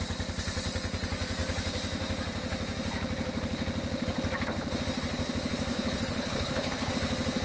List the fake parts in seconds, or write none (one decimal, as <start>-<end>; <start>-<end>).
5.7-6.9